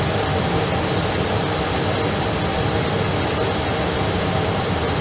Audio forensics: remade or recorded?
recorded